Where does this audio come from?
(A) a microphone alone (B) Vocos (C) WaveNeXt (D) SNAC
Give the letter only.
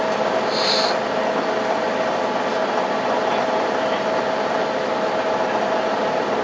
A